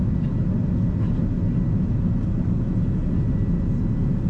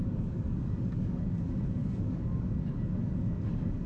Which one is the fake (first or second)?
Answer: second